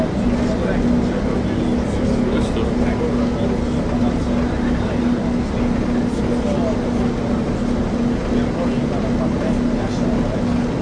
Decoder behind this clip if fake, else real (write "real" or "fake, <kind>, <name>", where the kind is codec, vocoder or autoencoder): real